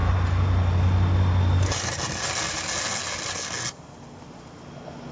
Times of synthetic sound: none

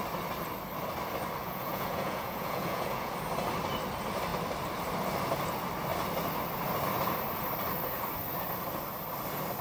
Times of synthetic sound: 1.4-3.1 (vocoder, Vocos)

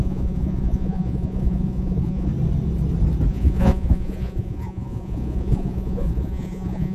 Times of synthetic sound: 0.0-2.3 (vocoder, Vocos); 3.3-6.9

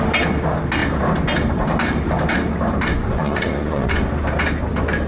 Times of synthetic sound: 2.9-4.0 (vocoder, Vocos)

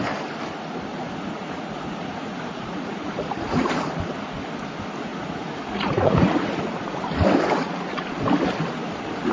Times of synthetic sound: 0.9-3.7 (vocoder, Vocos); 5.1-7.0